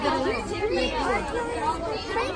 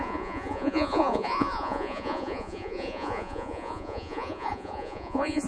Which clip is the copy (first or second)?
second